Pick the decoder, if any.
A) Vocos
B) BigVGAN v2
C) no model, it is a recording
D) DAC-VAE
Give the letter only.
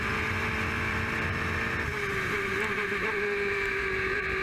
B